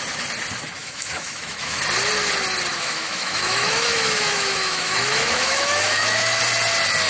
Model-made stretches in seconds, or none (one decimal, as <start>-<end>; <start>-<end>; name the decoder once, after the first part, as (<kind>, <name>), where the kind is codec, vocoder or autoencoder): 0.8-1.8 (autoencoder, DAC-VAE); 2.7-6.4